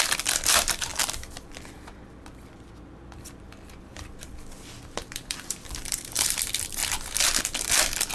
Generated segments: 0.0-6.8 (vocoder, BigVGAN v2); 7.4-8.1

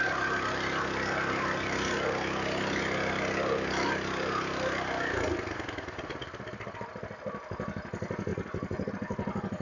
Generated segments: none

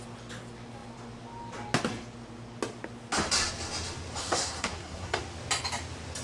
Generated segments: 4.2-5.2 (codec, SNAC)

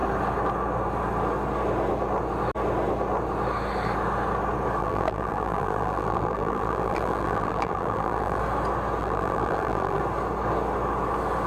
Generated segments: 4.8-8.4 (vocoder, BigVGAN v2); 9.0-10.0